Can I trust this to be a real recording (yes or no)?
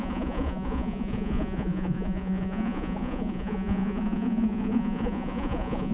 no